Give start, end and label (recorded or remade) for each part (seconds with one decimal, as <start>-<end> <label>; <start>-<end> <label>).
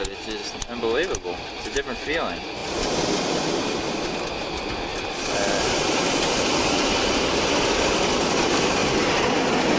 0.0-4.9 recorded; 4.9-7.9 remade; 7.9-8.8 recorded; 8.8-9.4 remade; 9.4-9.8 recorded